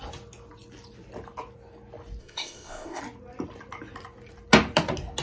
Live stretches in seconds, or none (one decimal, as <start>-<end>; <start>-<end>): 0.0-2.2; 3.0-5.2